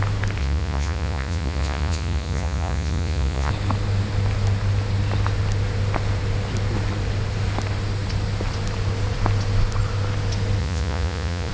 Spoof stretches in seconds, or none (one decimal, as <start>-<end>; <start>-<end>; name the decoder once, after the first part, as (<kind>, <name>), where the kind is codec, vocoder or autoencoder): 0.4-3.5 (vocoder, Vocos); 10.6-11.5

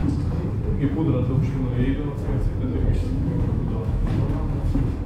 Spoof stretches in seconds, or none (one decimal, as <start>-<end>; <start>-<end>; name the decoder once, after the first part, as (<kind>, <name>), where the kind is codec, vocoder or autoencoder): 3.0-4.1 (autoencoder, DAC-VAE)